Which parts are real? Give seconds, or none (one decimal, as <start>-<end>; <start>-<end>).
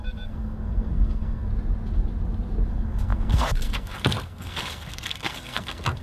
1.5-2.7